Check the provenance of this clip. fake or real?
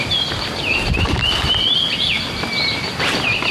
real